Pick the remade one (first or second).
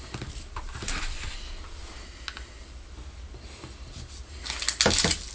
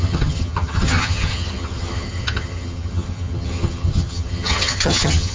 second